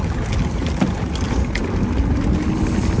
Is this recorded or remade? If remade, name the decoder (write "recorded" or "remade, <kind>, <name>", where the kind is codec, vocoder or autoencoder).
recorded